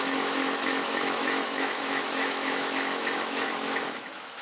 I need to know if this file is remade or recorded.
remade